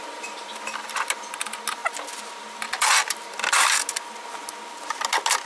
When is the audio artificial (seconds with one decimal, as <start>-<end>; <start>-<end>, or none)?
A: none